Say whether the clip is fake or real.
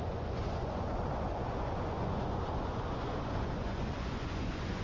fake